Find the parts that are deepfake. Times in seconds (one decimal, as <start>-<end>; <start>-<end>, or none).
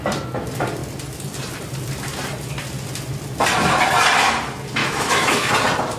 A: 4.8-5.5